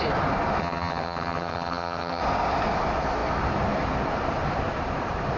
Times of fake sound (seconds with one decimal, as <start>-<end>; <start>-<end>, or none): 0.6-2.2